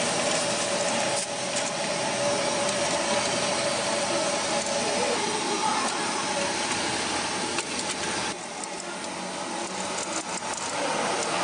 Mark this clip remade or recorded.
recorded